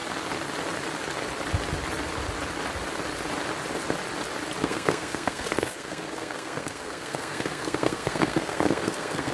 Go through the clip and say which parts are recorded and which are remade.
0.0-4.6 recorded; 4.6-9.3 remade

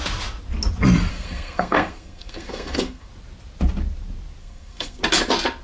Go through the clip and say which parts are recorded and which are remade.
0.0-1.1 recorded; 1.1-3.1 remade; 3.1-4.4 recorded; 4.4-5.0 remade; 5.0-5.6 recorded

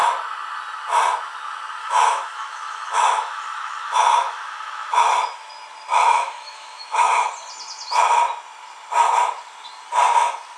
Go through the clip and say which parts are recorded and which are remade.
0.0-1.8 recorded; 1.8-5.5 remade; 5.5-5.9 recorded; 5.9-7.3 remade; 7.3-10.6 recorded

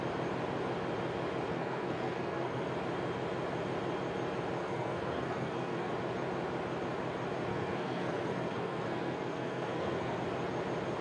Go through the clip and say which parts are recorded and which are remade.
0.0-1.5 recorded; 1.5-2.7 remade; 2.7-4.6 recorded; 4.6-5.9 remade; 5.9-7.5 recorded; 7.5-10.2 remade; 10.2-11.0 recorded